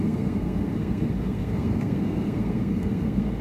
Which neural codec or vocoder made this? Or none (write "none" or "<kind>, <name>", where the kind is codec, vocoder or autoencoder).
codec, SNAC